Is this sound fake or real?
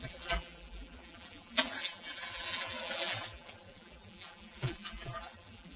fake